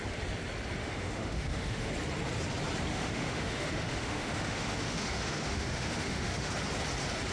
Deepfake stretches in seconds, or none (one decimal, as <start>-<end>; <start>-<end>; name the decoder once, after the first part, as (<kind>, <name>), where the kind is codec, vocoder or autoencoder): 0.8-1.9 (autoencoder, DAC-VAE); 2.9-6.5